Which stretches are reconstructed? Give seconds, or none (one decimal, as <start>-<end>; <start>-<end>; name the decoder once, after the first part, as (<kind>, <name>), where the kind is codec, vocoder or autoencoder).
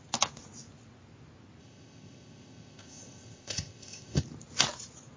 1.6-4.2 (codec, ZipCodec)